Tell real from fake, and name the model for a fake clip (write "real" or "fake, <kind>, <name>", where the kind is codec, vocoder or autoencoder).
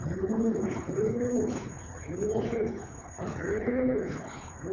fake, codec, HILCodec